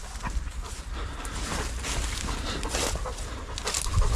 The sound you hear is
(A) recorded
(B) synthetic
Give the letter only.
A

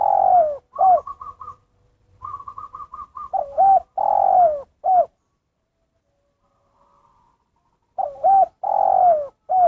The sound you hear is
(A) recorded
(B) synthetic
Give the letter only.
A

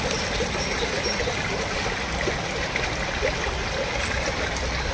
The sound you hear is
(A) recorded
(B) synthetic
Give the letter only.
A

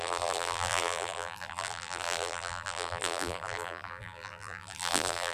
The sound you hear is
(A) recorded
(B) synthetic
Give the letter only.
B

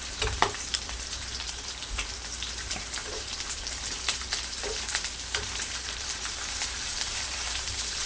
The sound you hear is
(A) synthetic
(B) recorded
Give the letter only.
A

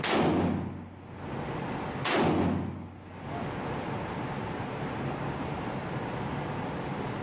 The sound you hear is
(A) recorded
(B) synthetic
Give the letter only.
A